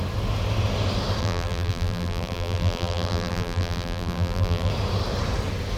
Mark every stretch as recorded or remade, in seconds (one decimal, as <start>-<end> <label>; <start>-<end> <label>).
0.0-1.2 recorded; 1.2-4.7 remade; 4.7-5.8 recorded